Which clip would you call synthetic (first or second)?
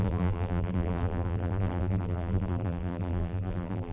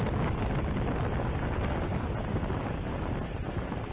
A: first